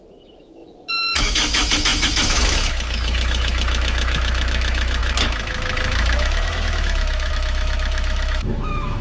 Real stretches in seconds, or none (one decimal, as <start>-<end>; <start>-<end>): none